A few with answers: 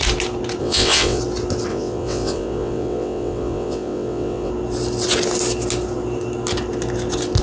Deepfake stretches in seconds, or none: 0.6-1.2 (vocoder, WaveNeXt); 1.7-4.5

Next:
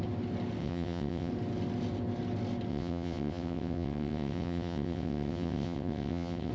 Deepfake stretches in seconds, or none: 0.6-1.3 (vocoder, WaveNeXt); 2.7-6.5

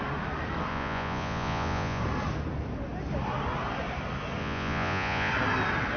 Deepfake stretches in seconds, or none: 0.7-2.0 (vocoder, Vocos); 4.4-5.3

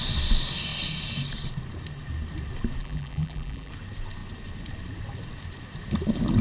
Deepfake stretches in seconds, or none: 2.8-3.7 (vocoder, BigVGAN v2)

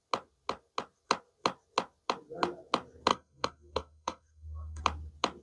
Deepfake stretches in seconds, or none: 3.1-4.8 (codec, SNAC)